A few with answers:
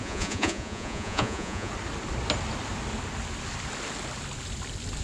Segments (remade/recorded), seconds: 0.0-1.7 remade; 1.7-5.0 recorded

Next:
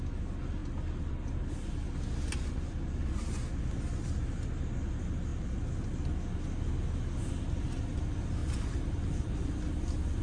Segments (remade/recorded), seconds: 0.0-8.4 recorded; 8.4-9.3 remade; 9.3-10.2 recorded

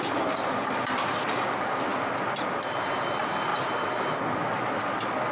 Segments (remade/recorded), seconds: 0.0-5.3 recorded

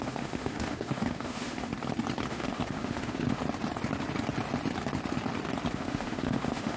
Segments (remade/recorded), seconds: 0.0-1.7 remade; 1.7-2.3 recorded; 2.3-3.4 remade; 3.4-5.7 recorded; 5.7-6.8 remade

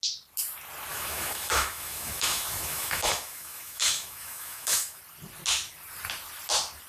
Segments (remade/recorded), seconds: 0.0-0.9 recorded; 0.9-5.0 remade; 5.0-6.9 recorded

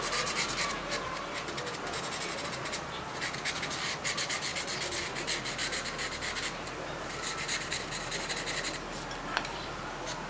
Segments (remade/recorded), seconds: 0.0-4.5 recorded; 4.5-5.1 remade; 5.1-5.6 recorded; 5.6-8.3 remade; 8.3-10.3 recorded

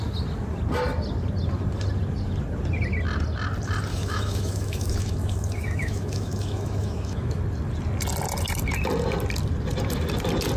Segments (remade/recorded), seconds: 0.0-3.9 recorded; 3.9-7.4 remade; 7.4-10.6 recorded

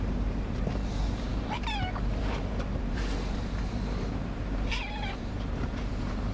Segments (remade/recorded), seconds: 0.0-6.3 remade